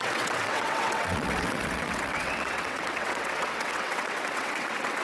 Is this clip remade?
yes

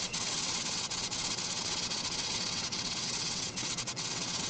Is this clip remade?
yes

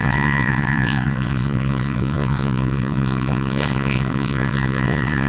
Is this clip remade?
yes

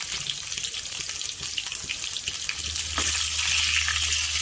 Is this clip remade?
no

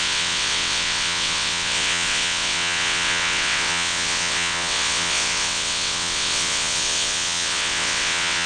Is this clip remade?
yes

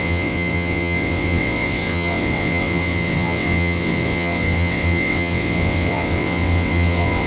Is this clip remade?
yes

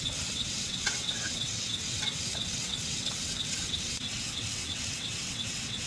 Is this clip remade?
yes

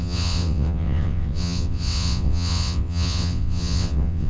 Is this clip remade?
yes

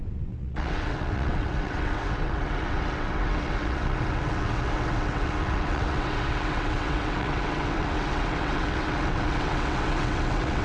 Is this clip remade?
yes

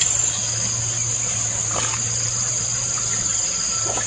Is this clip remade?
no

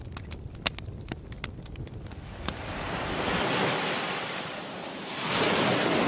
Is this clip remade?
no